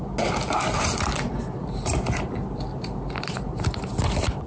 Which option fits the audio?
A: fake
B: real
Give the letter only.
B